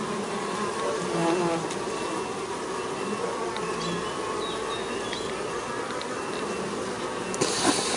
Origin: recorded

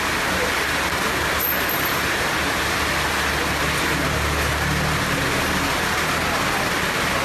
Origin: recorded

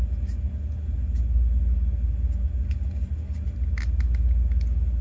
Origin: recorded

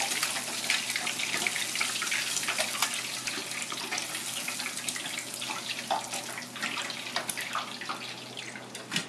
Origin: recorded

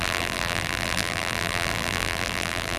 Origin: remade